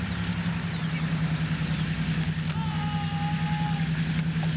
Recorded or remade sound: recorded